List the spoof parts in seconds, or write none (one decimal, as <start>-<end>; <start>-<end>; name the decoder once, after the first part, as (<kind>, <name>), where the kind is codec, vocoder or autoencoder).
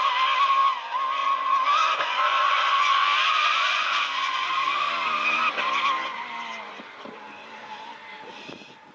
1.2-4.5 (vocoder, Vocos)